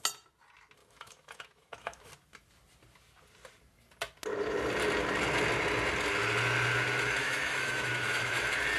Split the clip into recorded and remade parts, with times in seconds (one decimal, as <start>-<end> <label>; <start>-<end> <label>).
0.0-0.8 recorded; 0.8-2.1 remade; 2.1-7.2 recorded; 7.2-8.4 remade; 8.4-8.8 recorded